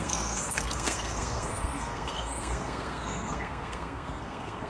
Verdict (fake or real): fake